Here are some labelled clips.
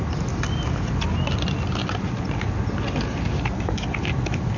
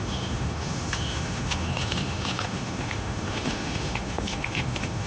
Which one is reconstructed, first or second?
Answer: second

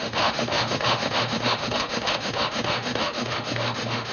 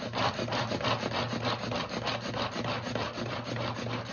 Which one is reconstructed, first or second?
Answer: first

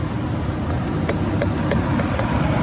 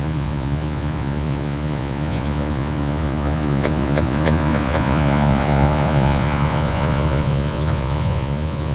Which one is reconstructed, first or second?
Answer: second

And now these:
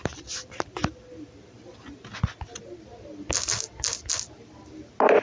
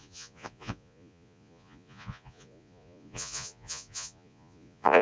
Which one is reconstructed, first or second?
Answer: second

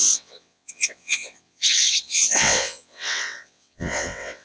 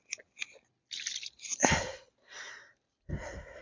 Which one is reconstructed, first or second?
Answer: first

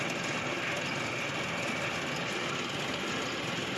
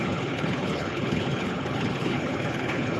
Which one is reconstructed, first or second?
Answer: second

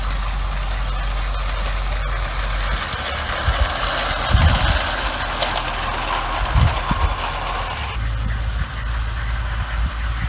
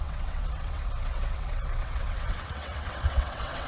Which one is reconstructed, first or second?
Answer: second